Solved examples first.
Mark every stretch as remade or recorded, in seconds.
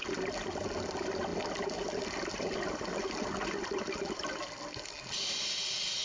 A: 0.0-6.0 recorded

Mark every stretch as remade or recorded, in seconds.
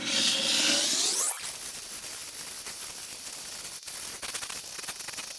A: 0.0-5.4 recorded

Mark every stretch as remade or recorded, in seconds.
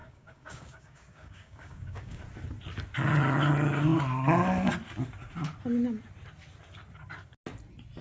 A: 0.0-2.2 remade; 2.2-8.0 recorded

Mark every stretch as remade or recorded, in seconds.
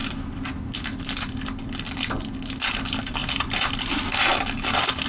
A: 0.0-2.2 remade; 2.2-3.2 recorded; 3.2-3.8 remade; 3.8-4.3 recorded; 4.3-5.1 remade